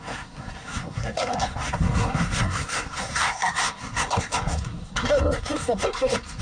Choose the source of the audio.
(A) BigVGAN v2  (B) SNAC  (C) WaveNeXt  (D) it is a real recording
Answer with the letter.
B